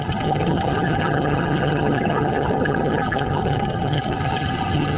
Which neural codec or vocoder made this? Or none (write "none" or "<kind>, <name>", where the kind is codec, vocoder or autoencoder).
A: vocoder, HiFi-GAN